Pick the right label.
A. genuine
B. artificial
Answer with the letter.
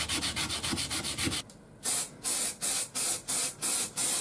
A